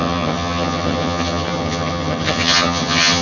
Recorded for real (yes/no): no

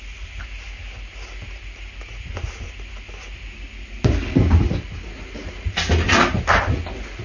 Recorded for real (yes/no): yes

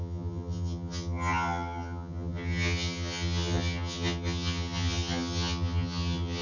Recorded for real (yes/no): no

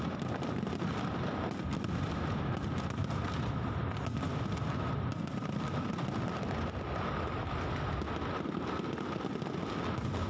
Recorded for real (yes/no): yes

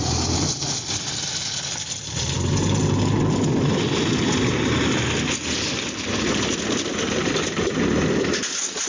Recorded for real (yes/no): yes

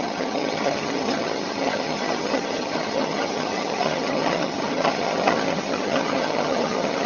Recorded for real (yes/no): no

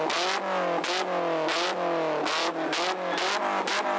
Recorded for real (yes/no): yes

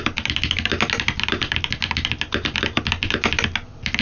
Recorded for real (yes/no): yes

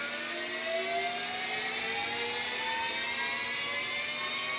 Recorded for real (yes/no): yes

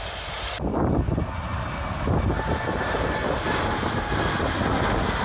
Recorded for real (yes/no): yes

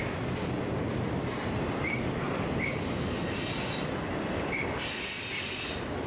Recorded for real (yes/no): yes